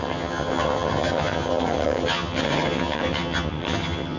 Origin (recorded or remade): remade